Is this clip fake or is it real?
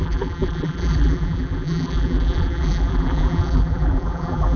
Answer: fake